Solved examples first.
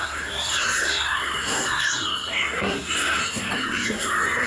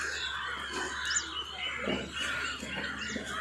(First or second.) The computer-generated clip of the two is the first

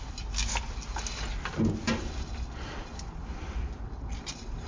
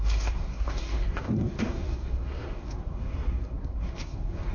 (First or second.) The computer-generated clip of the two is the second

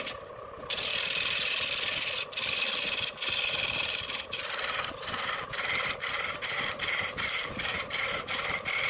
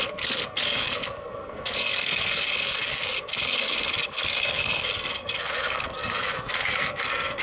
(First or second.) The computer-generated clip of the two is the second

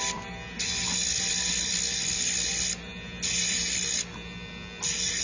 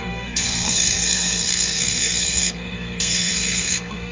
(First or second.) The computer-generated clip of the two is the second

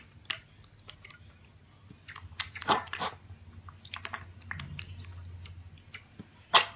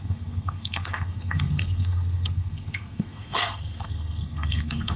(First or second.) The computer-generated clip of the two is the second